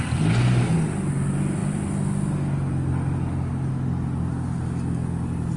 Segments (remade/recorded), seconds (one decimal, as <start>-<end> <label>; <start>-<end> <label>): 0.0-5.6 recorded